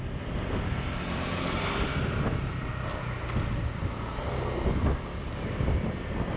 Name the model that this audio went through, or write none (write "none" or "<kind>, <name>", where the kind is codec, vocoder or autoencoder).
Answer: none